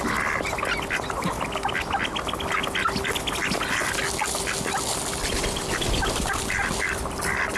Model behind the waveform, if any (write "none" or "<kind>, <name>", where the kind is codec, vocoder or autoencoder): none